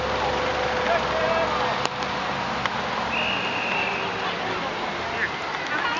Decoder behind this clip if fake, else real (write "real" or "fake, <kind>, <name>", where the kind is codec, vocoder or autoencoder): real